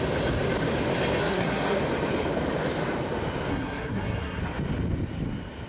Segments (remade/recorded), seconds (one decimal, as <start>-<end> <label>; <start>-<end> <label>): 0.0-1.2 recorded; 1.2-1.8 remade; 1.8-3.5 recorded; 3.5-4.4 remade; 4.4-5.7 recorded